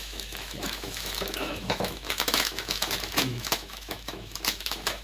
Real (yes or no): no